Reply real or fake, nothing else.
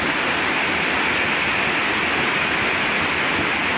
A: real